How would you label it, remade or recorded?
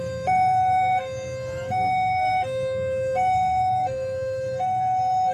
remade